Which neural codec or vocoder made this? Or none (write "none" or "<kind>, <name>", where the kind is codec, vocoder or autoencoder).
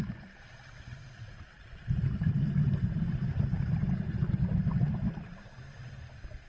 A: none